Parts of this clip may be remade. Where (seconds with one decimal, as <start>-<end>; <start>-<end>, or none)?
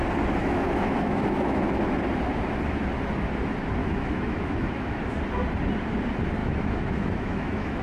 0.4-1.6; 3.8-5.2; 6.4-7.8